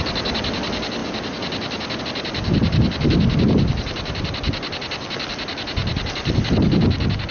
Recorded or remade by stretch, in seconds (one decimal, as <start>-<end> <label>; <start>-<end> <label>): 0.0-7.3 recorded